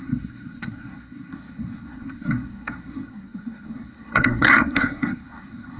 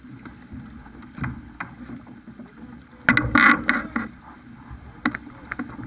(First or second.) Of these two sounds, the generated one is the first